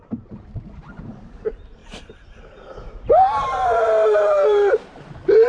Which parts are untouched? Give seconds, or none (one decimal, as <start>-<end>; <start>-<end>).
none